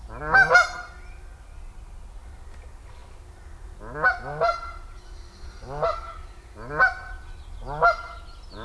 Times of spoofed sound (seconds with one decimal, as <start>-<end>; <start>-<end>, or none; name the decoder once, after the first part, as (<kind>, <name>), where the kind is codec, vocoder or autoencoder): none